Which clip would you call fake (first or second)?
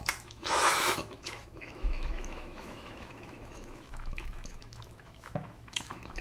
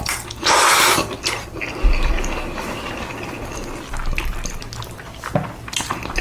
first